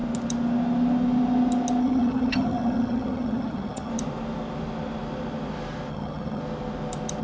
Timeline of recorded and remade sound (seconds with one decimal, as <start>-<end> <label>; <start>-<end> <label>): 0.0-1.8 recorded; 1.8-3.9 remade; 3.9-5.9 recorded; 5.9-6.4 remade; 6.4-7.2 recorded